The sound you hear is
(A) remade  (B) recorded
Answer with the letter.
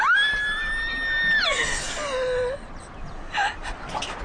B